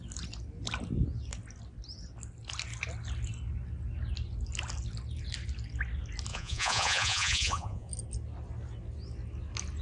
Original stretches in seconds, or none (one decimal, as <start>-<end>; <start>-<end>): 0.0-6.3; 7.9-9.8